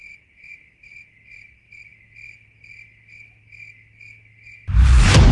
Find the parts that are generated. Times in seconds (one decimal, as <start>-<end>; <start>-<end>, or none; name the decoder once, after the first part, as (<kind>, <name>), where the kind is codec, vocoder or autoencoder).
none